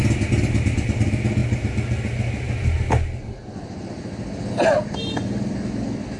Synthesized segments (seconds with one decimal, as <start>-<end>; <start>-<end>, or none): none